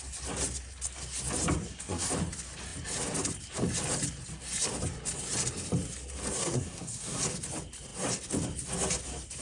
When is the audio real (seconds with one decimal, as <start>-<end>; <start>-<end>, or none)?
0.0-1.6; 2.1-6.4; 7.2-9.4